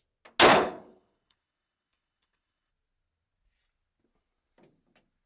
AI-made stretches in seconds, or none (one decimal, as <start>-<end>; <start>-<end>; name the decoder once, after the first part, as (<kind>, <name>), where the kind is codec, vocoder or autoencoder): 0.5-2.7 (codec, HILCodec)